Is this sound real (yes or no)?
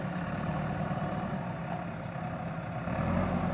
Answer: yes